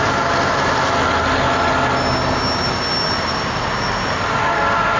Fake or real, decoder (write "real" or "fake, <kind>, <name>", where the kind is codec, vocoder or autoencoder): real